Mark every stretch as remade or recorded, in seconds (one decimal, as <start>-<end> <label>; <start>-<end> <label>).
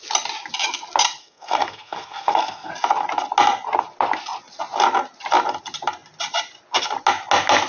0.0-1.2 recorded; 1.2-2.7 remade; 2.7-7.7 recorded